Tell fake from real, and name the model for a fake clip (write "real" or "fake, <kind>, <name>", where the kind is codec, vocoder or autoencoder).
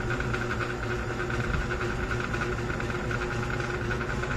real